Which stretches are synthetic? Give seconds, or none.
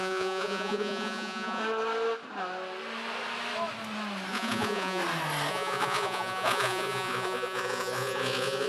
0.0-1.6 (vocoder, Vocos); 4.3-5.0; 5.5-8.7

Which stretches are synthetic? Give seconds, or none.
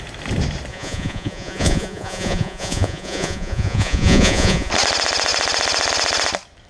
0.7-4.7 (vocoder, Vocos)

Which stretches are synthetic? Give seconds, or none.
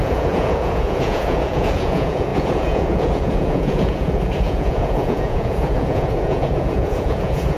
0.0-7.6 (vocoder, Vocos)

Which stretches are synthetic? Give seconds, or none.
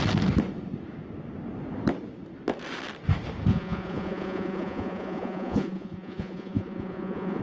3.5-7.4 (vocoder, Vocos)